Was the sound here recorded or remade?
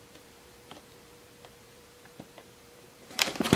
remade